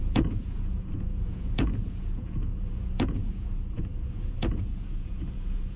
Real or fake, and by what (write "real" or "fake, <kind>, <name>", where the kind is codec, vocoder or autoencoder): fake, vocoder, Vocos